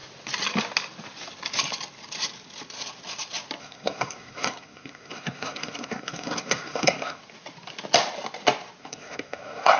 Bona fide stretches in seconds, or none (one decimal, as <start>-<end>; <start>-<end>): 0.0-3.6; 7.2-8.8